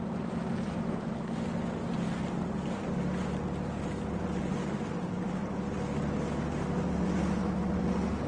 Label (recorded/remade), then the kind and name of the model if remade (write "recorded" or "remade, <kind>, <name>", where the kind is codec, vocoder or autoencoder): recorded